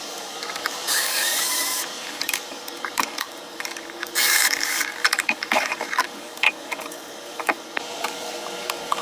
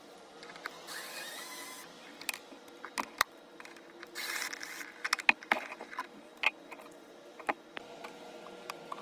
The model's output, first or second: first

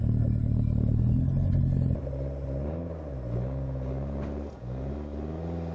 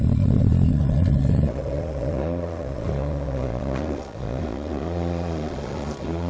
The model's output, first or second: second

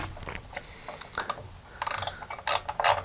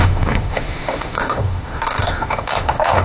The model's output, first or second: second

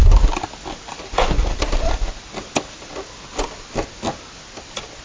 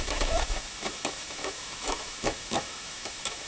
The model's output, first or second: second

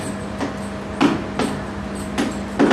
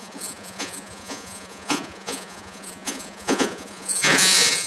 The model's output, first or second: second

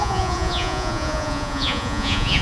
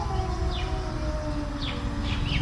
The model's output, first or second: first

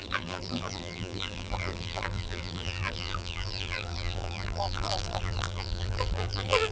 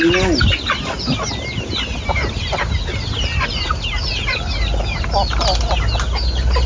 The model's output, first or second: first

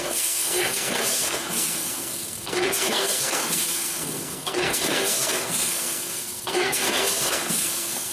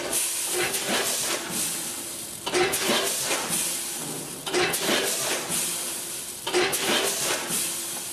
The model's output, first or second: first